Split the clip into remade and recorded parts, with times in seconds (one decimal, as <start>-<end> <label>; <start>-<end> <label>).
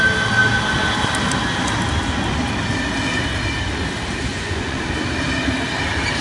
0.0-4.3 recorded; 4.3-4.8 remade; 4.8-6.2 recorded